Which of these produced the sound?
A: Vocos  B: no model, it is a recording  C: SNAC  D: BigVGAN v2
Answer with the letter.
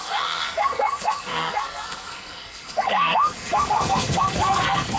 C